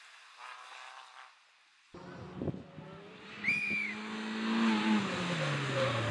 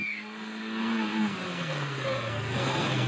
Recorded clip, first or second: first